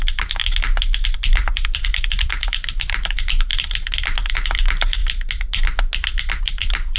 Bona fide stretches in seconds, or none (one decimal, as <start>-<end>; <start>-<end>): 0.4-1.3; 3.5-4.3; 5.0-6.4